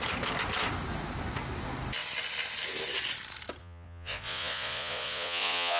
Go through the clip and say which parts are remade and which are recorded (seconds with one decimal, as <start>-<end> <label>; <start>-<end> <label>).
0.0-3.6 recorded; 3.6-5.8 remade